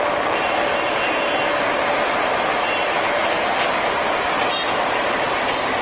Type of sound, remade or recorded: recorded